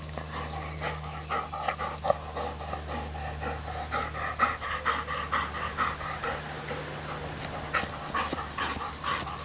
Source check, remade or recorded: recorded